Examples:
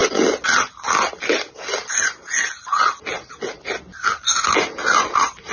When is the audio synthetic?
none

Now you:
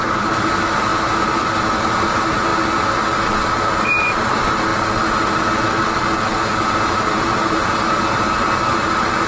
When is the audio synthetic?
0.0-0.9; 1.6-2.5; 3.8-4.7; 6.5-9.3

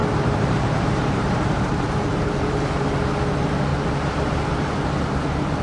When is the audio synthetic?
0.0-2.9; 3.7-5.6

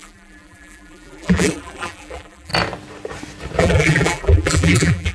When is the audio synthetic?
0.0-2.5; 3.6-5.1

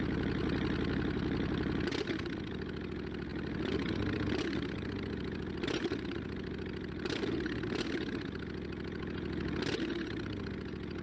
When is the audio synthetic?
3.3-7.6

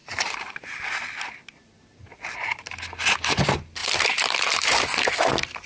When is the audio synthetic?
0.0-0.6; 3.8-4.8